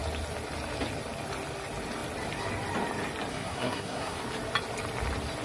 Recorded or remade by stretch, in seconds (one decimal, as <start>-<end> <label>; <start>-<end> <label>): 0.0-3.3 recorded; 3.3-4.2 remade; 4.2-5.4 recorded